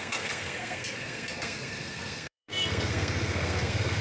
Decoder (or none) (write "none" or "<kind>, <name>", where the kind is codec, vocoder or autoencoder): codec, SNAC